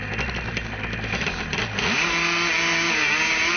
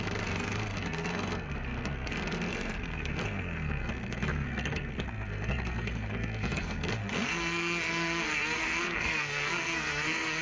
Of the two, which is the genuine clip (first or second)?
first